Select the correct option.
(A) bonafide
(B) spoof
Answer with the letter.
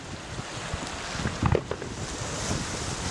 A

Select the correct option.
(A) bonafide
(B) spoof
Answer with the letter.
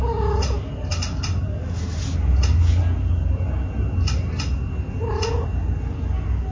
A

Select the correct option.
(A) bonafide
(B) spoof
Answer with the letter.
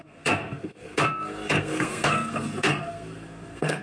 B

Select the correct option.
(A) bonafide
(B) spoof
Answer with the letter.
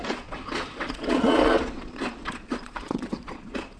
B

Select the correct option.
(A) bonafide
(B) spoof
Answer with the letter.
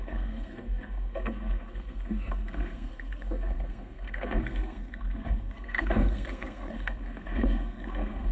B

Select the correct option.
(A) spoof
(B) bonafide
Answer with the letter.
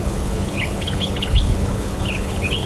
A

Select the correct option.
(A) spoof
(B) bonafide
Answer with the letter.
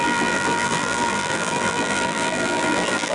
A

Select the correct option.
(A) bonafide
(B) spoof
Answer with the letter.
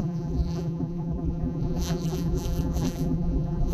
B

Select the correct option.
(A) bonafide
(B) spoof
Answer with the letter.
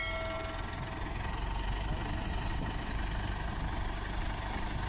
A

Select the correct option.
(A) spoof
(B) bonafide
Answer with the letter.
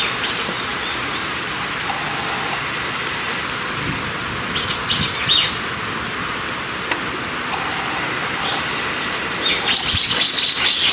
B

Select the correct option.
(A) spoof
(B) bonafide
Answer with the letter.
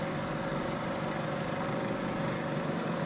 B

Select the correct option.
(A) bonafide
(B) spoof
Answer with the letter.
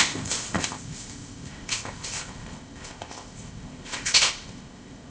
B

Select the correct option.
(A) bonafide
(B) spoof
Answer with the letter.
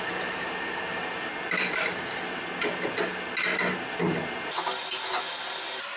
A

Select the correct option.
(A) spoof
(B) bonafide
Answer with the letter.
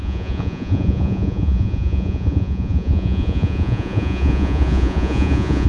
A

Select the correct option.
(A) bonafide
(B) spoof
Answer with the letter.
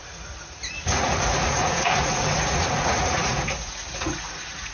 B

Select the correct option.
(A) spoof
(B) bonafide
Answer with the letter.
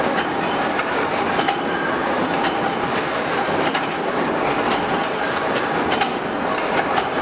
B